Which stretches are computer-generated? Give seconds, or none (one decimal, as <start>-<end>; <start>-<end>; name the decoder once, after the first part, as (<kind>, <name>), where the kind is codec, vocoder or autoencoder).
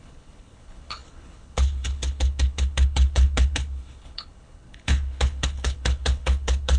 0.0-6.8 (codec, HILCodec)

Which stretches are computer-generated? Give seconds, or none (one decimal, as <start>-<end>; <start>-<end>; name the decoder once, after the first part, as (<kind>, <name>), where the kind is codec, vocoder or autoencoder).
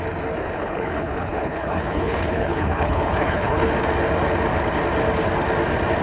0.4-3.7 (codec, HILCodec)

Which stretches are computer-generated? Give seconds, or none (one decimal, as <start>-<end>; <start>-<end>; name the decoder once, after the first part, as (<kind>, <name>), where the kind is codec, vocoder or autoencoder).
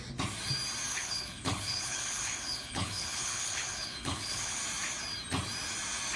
0.9-4.6 (codec, HILCodec)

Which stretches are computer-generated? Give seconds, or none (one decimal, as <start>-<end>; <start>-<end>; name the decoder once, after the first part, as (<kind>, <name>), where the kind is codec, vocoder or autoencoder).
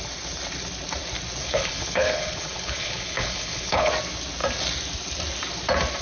1.4-3.9 (codec, HILCodec)